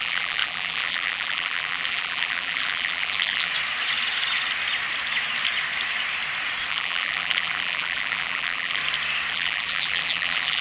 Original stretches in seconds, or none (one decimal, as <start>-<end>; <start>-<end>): 3.5-6.7; 8.8-9.3